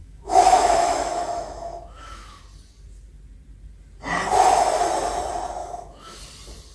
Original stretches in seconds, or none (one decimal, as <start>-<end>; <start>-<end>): 2.4-5.6; 6.2-6.7